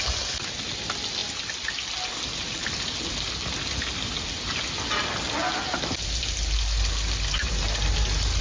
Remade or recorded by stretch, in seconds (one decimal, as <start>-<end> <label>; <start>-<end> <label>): 0.0-8.4 recorded